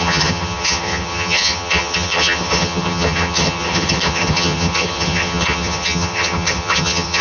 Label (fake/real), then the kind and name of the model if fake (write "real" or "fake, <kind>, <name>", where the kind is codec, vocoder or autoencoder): fake, vocoder, HiFi-GAN